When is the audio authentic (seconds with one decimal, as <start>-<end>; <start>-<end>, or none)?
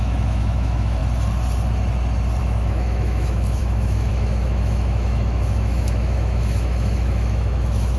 1.0-2.4